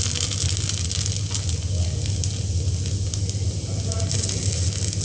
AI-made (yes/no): no